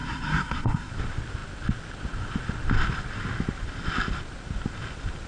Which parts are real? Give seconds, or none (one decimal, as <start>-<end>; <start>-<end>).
0.9-5.3